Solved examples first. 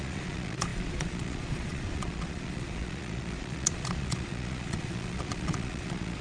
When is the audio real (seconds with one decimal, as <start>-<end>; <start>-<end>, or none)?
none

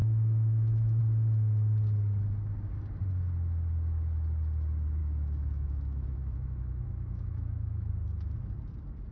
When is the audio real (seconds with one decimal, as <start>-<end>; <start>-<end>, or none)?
1.0-5.0; 7.9-9.1

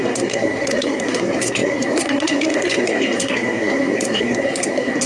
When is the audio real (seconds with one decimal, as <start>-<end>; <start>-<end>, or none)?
none